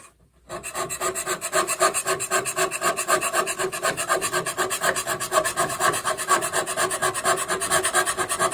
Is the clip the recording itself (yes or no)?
yes